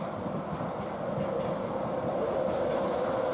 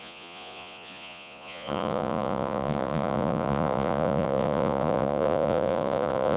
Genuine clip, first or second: first